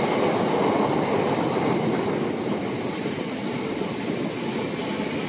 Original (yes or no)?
yes